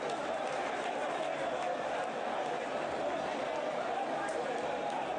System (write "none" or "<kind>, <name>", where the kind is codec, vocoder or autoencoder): none